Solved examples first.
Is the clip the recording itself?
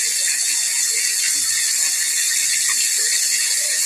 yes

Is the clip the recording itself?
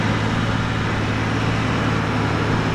yes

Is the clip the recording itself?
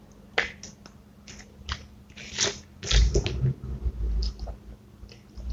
yes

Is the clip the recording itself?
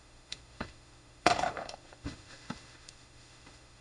no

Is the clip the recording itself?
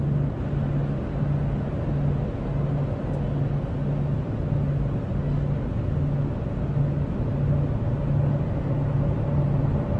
yes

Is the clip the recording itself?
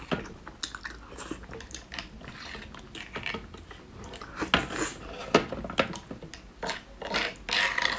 yes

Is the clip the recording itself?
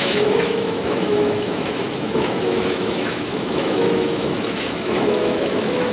no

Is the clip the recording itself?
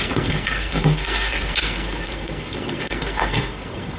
no